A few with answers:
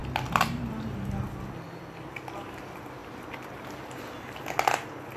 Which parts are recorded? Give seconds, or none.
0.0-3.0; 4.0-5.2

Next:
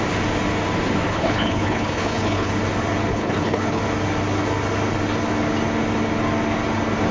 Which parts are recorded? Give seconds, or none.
0.0-1.1; 2.5-3.1; 3.8-7.1